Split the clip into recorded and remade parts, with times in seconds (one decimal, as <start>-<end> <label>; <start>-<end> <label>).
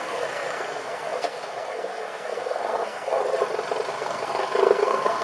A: 0.0-3.2 remade; 3.2-3.9 recorded; 3.9-5.2 remade